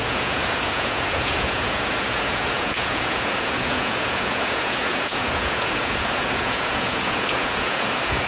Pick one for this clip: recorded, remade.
remade